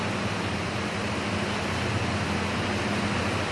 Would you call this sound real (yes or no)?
yes